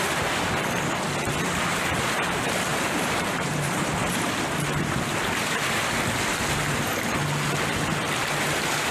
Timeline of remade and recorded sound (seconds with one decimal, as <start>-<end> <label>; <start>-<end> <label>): 0.0-2.7 recorded; 2.7-3.9 remade; 3.9-8.9 recorded